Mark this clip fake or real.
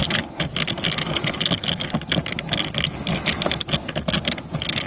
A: real